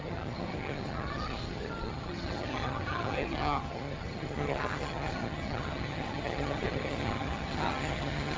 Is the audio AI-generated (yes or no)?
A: yes